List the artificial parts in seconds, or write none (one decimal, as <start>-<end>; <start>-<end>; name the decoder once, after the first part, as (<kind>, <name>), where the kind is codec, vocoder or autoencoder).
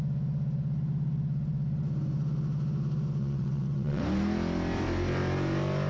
3.2-4.0 (vocoder, WaveNeXt)